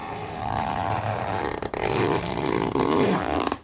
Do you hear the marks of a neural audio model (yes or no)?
yes